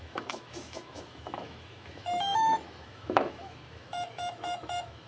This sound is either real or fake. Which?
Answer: fake